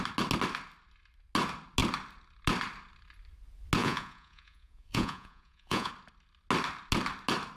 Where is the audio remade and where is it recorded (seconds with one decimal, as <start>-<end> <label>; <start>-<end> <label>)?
0.0-3.8 recorded; 3.8-5.9 remade; 5.9-7.6 recorded